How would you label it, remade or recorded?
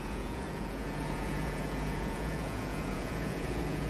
remade